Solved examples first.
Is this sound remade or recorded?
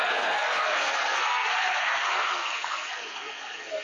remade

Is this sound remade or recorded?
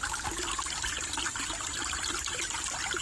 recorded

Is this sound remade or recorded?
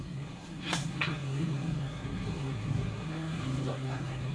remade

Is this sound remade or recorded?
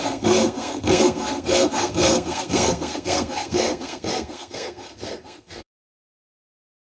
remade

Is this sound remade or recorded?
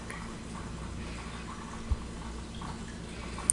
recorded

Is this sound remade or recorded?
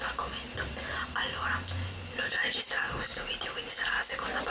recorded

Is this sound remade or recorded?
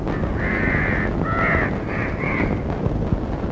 recorded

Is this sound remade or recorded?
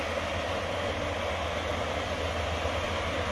recorded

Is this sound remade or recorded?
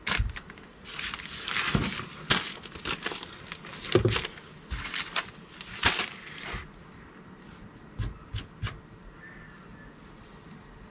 recorded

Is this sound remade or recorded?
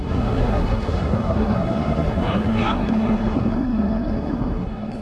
remade